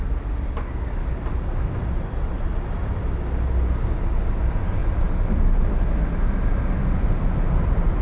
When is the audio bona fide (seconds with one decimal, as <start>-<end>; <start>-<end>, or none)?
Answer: 0.0-8.0